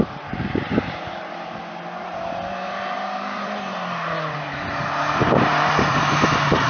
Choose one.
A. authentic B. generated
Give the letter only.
B